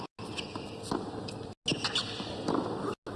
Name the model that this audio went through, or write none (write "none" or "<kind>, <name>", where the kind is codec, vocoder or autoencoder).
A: none